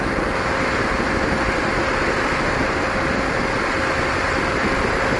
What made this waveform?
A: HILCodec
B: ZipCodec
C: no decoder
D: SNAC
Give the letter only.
C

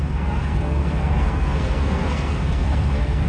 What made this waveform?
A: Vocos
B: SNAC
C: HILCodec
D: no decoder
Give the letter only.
B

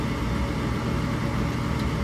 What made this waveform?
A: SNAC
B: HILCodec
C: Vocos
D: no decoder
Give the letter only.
D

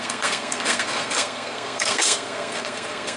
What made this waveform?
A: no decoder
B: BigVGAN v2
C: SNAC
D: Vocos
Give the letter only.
C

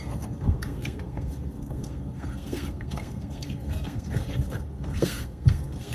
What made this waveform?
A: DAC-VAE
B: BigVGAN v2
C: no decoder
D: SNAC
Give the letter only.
D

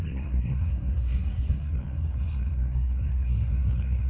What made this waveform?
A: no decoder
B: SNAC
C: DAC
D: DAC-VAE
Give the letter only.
B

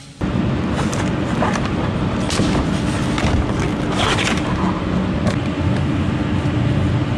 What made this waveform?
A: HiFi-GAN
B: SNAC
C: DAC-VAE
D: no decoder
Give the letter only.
D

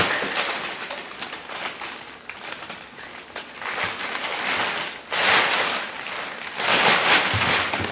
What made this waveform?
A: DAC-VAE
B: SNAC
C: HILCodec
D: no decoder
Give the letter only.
D